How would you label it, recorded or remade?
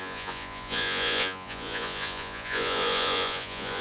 remade